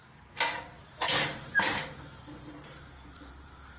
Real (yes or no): no